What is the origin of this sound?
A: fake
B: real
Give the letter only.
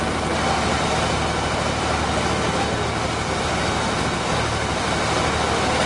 B